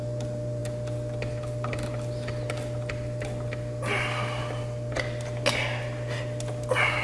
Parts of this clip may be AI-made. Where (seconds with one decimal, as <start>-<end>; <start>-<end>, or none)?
none